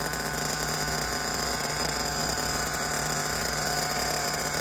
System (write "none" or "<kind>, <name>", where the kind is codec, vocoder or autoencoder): none